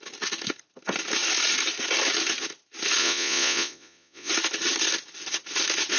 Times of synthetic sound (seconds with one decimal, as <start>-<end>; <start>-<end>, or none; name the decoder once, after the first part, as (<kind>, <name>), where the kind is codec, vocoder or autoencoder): 3.0-4.3 (vocoder, Vocos)